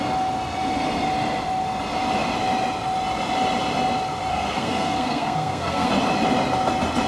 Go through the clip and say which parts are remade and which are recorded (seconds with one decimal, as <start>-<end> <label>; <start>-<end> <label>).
0.0-4.3 recorded; 4.3-5.9 remade; 5.9-7.1 recorded